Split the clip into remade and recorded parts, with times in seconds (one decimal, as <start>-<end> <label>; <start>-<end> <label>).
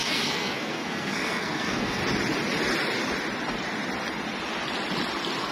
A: 0.0-2.0 remade; 2.0-5.5 recorded